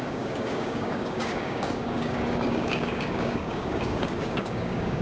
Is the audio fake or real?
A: fake